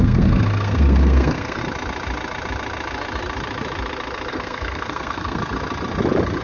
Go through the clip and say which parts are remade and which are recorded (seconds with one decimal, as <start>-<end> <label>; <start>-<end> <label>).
0.0-1.6 remade; 1.6-4.3 recorded; 4.3-5.4 remade; 5.4-6.4 recorded